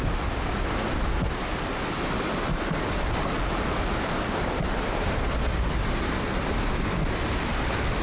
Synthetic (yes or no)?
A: no